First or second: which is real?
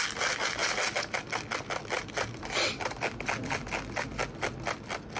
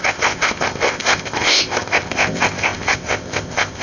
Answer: first